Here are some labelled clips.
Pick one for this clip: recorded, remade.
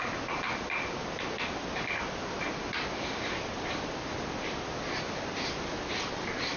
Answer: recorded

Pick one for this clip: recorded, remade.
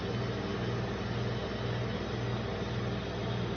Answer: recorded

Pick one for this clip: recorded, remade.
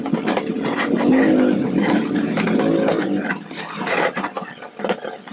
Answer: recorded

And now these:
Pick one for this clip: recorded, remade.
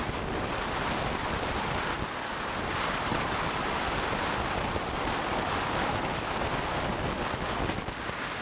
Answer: recorded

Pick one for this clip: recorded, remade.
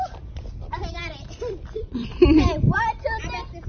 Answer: remade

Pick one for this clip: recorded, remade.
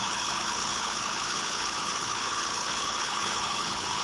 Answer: remade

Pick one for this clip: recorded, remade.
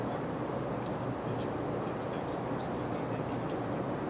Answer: recorded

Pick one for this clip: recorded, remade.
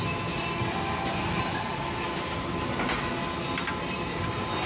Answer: recorded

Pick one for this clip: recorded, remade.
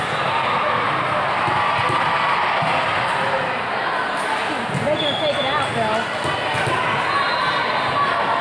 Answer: recorded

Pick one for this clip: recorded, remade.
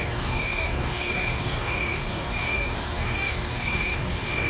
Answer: remade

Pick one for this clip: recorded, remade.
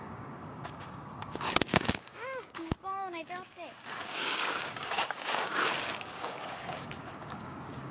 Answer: remade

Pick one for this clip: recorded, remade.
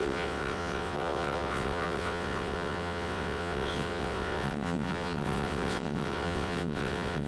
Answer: remade